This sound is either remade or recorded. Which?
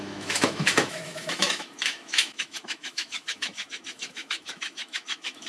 remade